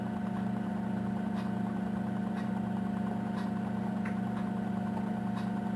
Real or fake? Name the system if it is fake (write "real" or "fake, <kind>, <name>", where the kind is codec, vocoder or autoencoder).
real